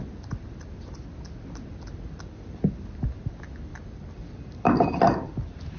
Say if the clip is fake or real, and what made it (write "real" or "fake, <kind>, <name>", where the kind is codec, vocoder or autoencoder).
real